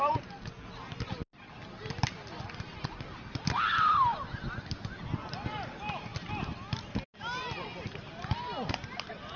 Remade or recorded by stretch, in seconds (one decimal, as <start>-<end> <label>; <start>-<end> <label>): 0.0-9.4 recorded